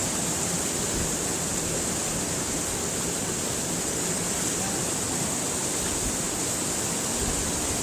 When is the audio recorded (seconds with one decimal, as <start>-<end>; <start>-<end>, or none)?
0.0-5.6; 6.4-7.8